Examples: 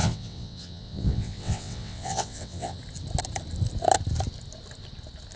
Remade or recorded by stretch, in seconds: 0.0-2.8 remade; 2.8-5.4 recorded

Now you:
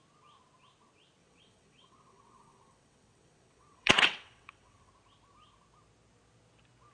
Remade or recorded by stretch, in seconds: 0.0-1.2 recorded; 1.2-4.9 remade; 4.9-6.9 recorded

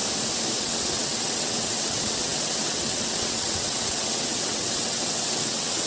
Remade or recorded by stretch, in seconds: 0.0-0.6 recorded; 0.6-5.9 remade

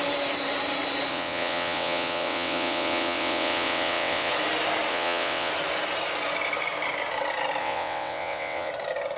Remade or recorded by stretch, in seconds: 0.0-1.1 recorded; 1.1-4.3 remade; 4.3-4.9 recorded; 4.9-5.5 remade; 5.5-7.6 recorded; 7.6-8.7 remade; 8.7-9.2 recorded

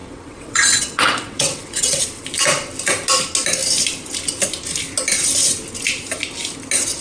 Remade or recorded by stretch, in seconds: 0.0-2.0 remade; 2.0-7.0 recorded

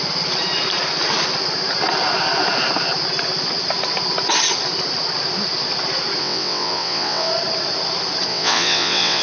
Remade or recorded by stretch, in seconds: 0.0-6.2 recorded; 6.2-7.3 remade; 7.3-8.3 recorded; 8.3-9.2 remade

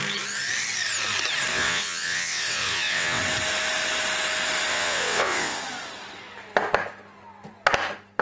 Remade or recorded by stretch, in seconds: 0.0-1.5 recorded; 1.5-3.2 remade; 3.2-4.7 recorded; 4.7-5.6 remade; 5.6-8.2 recorded

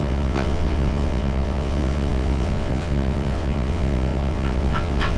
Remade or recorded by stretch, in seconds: 0.0-5.2 remade